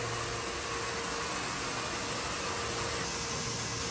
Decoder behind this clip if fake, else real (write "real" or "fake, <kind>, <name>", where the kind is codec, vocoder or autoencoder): real